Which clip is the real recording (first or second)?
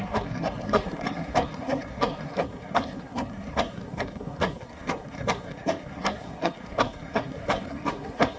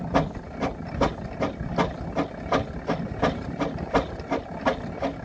second